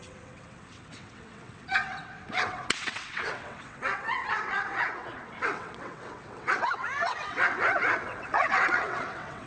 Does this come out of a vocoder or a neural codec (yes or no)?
yes